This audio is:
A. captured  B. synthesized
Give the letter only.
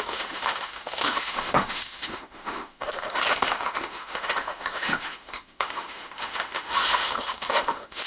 B